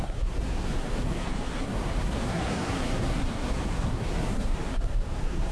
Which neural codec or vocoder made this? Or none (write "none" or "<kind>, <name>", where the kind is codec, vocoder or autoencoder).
codec, SNAC